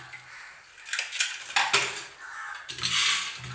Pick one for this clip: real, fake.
real